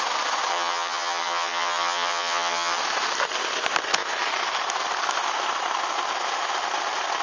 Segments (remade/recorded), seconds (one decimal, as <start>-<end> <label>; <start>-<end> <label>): 0.0-0.5 recorded; 0.5-2.8 remade; 2.8-7.2 recorded